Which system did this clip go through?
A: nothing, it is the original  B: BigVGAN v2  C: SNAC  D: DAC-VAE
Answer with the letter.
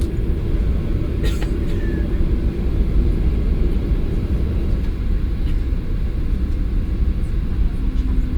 A